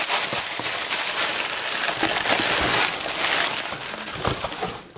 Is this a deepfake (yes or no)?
no